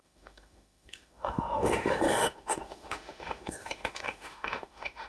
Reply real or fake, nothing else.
fake